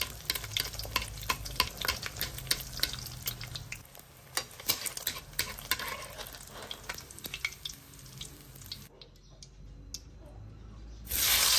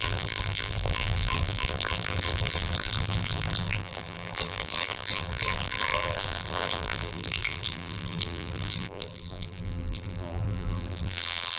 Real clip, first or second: first